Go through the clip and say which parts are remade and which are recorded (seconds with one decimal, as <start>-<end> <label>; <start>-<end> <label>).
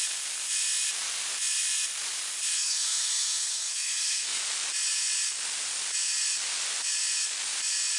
0.0-2.5 recorded; 2.5-4.4 remade; 4.4-8.0 recorded